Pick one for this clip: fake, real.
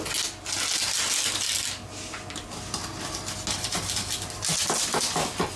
real